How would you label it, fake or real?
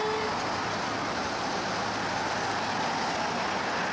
real